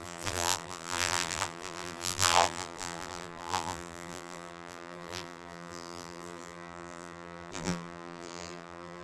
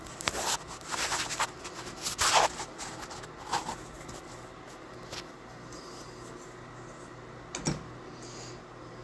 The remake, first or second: first